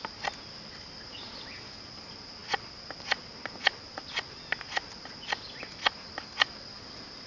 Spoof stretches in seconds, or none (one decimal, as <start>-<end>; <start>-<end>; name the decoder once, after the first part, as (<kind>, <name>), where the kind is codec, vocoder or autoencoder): none

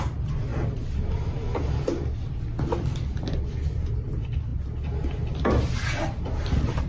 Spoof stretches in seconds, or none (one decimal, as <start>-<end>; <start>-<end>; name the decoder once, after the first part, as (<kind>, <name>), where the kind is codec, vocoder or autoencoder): none

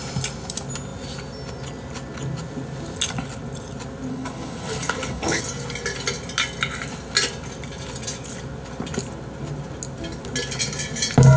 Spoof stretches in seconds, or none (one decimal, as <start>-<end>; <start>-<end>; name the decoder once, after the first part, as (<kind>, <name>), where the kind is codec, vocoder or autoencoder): 4.1-5.4 (codec, HILCodec)